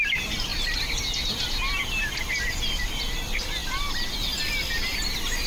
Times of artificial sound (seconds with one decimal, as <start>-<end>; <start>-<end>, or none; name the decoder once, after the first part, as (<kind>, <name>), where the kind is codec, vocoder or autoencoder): 0.5-1.0 (vocoder, BigVGAN v2); 3.6-4.1